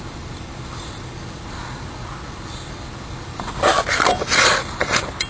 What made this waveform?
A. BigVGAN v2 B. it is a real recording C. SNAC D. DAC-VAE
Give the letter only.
A